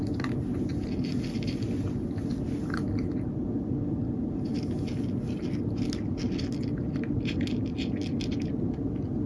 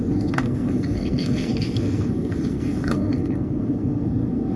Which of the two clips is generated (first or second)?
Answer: second